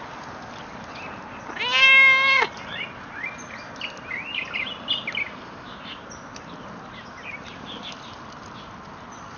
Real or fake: real